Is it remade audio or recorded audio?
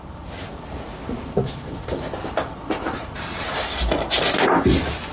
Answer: remade